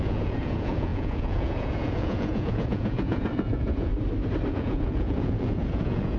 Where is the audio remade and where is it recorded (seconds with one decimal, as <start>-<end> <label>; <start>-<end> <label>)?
0.0-3.9 remade; 3.9-4.5 recorded; 4.5-6.2 remade